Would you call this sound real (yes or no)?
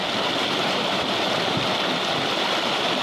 yes